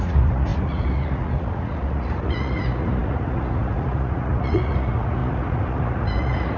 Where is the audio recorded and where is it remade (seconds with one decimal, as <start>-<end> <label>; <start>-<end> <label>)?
0.0-6.6 remade